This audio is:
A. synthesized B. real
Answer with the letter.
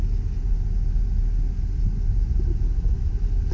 B